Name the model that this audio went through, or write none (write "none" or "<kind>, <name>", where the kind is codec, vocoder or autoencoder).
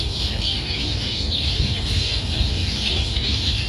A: codec, DAC